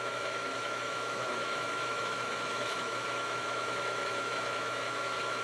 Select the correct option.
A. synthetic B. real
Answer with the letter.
A